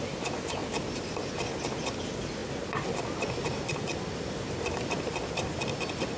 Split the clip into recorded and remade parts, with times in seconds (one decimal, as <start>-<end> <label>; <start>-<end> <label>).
0.0-2.4 recorded; 2.4-5.8 remade; 5.8-6.2 recorded